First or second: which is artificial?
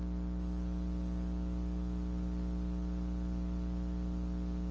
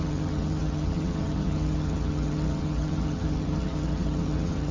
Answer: second